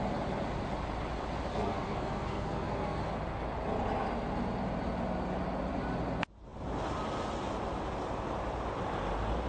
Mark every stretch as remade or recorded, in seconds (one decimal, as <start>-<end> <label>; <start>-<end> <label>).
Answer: 0.0-1.5 recorded; 1.5-3.0 remade; 3.0-9.5 recorded